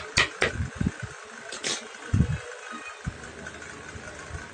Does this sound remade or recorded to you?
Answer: recorded